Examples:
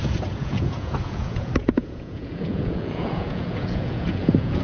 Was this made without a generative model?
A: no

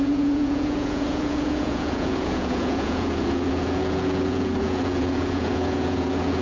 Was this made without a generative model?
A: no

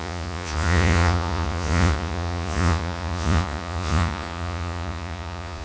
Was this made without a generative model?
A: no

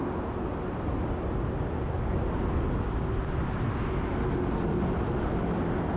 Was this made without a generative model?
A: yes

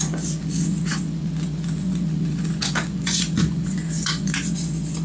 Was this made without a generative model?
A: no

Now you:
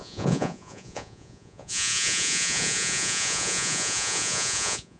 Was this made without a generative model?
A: no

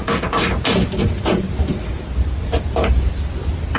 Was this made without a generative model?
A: yes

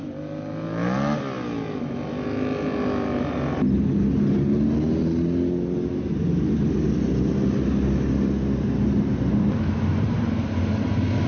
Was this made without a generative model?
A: yes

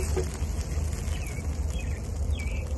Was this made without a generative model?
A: yes